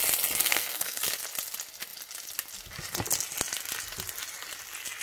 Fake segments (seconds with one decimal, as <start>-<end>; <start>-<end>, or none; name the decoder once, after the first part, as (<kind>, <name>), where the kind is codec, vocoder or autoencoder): 0.4-1.0 (codec, SNAC)